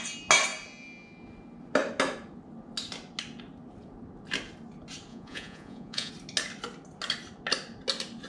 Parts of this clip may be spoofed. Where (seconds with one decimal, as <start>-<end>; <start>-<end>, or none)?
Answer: 5.1-6.1